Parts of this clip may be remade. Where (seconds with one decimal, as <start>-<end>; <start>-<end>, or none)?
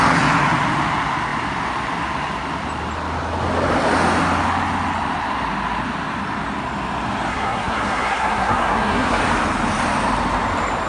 7.3-9.2